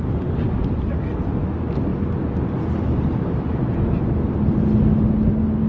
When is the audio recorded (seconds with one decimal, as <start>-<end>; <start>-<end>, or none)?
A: 0.0-5.7